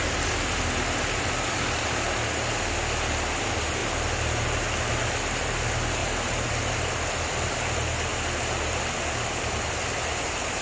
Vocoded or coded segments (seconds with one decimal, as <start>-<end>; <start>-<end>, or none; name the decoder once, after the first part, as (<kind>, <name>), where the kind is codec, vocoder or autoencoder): 6.0-6.6 (vocoder, BigVGAN v2); 8.1-8.8